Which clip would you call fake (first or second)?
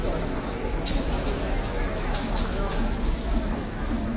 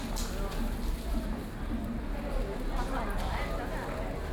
first